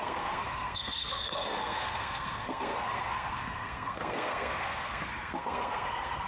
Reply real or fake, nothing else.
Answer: fake